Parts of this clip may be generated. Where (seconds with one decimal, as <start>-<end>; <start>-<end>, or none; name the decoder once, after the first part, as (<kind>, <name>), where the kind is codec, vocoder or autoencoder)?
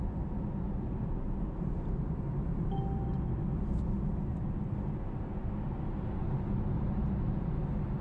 none